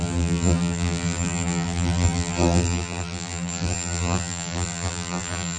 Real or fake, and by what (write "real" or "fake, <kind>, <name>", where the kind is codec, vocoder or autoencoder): fake, vocoder, BigVGAN v2